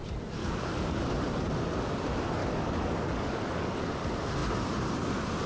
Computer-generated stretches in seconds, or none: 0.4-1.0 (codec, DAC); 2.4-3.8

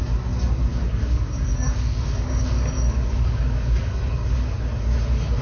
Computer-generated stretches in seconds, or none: 0.7-3.9 (codec, DAC)

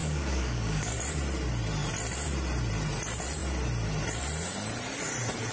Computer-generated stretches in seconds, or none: 0.0-0.9 (codec, DAC)

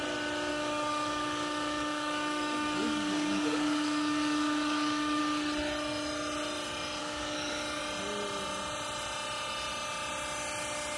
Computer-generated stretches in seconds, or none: 0.5-5.2 (codec, DAC); 7.0-7.8